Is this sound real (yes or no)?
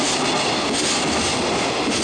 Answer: yes